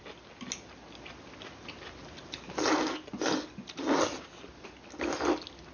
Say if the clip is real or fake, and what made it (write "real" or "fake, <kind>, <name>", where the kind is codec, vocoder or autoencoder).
real